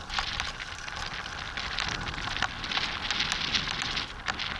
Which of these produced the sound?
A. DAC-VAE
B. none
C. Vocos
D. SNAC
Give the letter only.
B